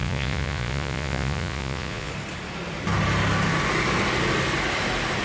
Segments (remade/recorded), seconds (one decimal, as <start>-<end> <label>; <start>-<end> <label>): 0.0-2.1 remade; 2.1-5.2 recorded